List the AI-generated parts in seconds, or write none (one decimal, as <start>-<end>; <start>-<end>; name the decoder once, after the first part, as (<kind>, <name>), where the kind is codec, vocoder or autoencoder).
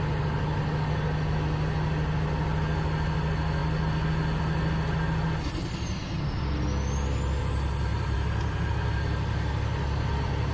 7.9-8.7 (vocoder, BigVGAN v2)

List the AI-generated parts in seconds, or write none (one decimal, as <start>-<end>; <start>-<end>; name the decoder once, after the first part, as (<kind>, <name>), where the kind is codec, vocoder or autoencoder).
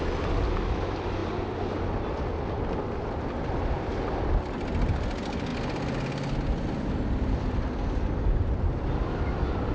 none